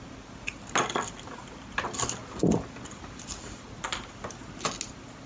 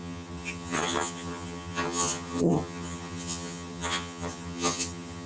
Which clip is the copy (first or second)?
second